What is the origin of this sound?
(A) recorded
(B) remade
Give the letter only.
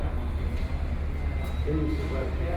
A